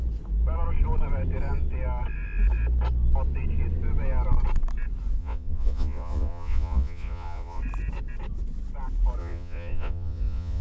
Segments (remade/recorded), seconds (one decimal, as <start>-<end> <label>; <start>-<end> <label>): 0.0-5.2 recorded; 5.2-7.6 remade; 7.6-9.2 recorded; 9.2-10.6 remade